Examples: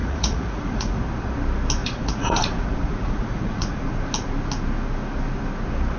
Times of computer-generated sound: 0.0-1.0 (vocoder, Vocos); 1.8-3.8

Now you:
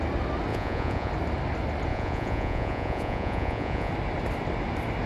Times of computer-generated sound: 0.5-1.1 (vocoder, Vocos); 1.9-3.9

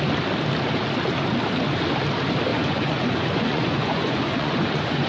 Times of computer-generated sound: 2.5-5.1 (vocoder, Vocos)

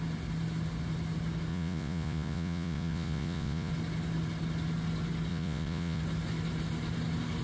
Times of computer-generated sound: 1.5-3.7 (vocoder, Vocos); 5.3-6.0

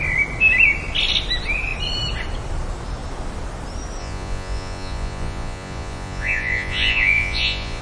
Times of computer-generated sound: 4.0-7.8 (vocoder, Vocos)

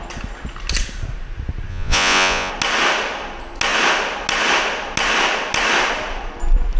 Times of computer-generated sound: 1.7-2.5 (vocoder, Vocos)

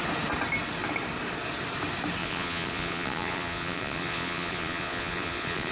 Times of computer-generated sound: 2.2-5.7 (vocoder, Vocos)

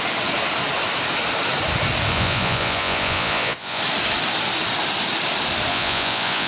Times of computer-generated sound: 2.1-3.8 (vocoder, Vocos); 5.7-6.5